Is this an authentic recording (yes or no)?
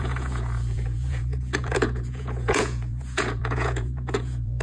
no